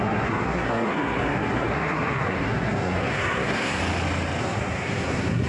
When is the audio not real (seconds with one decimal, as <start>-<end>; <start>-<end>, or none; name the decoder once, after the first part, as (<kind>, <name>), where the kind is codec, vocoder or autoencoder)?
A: 0.0-3.8 (codec, SNAC); 4.4-5.5

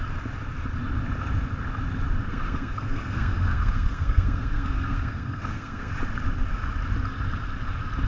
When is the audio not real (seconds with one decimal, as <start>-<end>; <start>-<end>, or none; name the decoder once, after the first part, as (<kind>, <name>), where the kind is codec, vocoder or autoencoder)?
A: 2.3-5.9 (codec, SNAC)

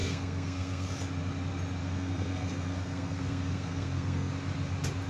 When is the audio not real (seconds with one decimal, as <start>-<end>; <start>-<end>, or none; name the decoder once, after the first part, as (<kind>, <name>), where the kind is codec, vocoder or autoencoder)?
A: 0.0-0.9 (codec, SNAC); 1.8-4.3

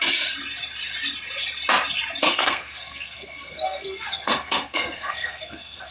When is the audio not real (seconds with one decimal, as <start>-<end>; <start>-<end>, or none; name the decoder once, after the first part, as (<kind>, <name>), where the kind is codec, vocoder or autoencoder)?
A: 2.2-5.9 (codec, SNAC)